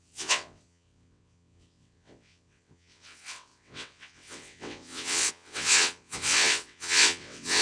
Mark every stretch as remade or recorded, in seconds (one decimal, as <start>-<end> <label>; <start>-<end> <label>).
0.0-7.6 remade